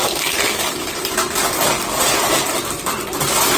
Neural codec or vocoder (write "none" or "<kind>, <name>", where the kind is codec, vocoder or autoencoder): none